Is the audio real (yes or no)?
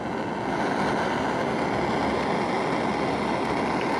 yes